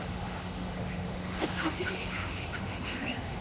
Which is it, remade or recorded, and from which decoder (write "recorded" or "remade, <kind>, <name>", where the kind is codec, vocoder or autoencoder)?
remade, autoencoder, DAC-VAE